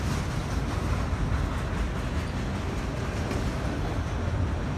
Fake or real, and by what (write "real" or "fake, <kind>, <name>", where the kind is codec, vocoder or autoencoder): real